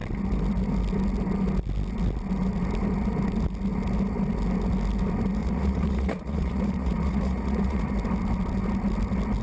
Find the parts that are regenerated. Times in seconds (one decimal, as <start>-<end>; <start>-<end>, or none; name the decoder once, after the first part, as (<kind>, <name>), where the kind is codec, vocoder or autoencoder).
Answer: 5.4-7.9 (vocoder, Vocos)